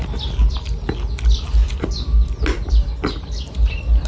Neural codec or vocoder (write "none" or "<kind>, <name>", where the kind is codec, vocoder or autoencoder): none